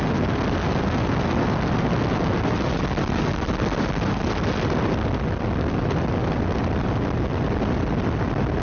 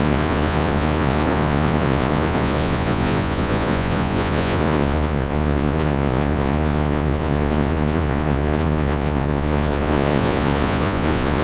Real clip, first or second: first